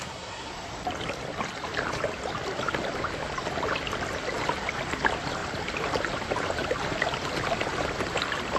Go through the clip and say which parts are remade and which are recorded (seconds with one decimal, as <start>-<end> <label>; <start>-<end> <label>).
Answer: 0.0-0.5 remade; 0.5-8.6 recorded